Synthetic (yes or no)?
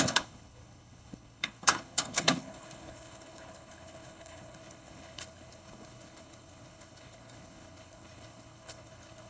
yes